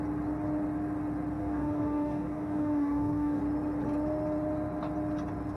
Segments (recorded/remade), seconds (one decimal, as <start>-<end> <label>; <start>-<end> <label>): 0.0-1.4 recorded; 1.4-3.4 remade; 3.4-5.6 recorded